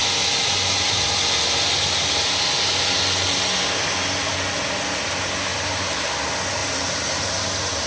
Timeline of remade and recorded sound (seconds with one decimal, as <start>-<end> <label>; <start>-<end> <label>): 0.0-5.5 recorded; 5.5-6.1 remade; 6.1-6.6 recorded; 6.6-7.4 remade; 7.4-7.9 recorded